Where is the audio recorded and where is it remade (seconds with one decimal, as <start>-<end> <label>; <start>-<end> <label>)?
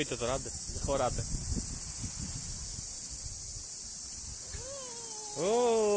0.0-6.0 recorded